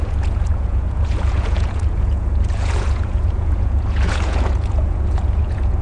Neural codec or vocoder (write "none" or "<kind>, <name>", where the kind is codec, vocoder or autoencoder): vocoder, Vocos